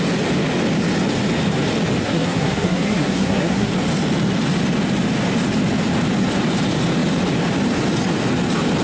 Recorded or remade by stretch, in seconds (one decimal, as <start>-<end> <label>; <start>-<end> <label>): 0.0-2.0 recorded; 2.0-3.7 remade; 3.7-8.8 recorded